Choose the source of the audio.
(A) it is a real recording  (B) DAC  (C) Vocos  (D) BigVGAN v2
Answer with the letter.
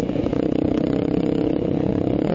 C